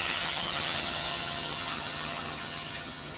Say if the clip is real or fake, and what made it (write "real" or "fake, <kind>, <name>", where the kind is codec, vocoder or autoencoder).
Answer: fake, vocoder, HiFi-GAN